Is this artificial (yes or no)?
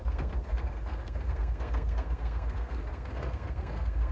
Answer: yes